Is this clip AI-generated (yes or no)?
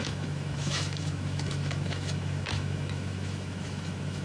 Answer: yes